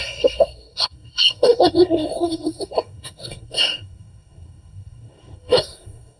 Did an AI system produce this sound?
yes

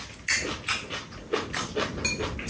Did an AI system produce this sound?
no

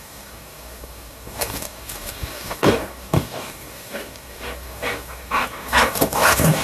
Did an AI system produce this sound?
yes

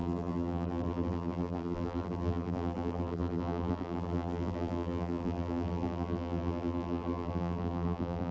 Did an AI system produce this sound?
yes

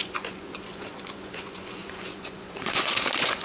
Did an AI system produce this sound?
yes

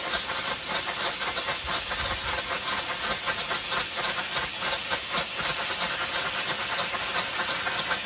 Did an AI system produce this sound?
no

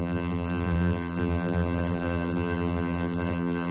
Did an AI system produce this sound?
yes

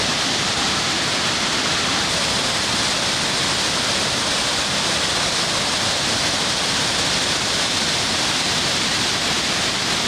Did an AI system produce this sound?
yes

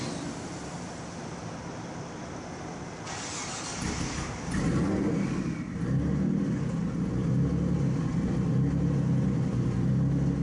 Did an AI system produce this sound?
no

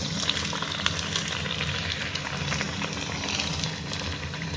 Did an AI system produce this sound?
no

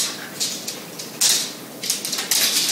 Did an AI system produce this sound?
no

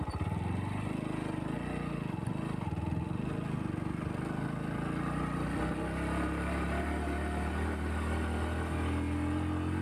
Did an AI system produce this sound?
no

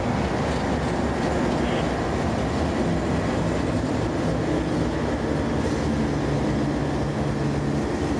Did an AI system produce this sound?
no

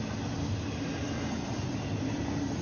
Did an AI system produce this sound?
no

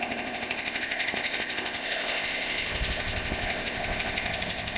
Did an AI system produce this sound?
yes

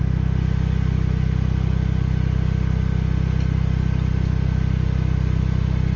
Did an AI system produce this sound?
no